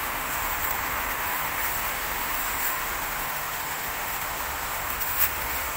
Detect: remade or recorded remade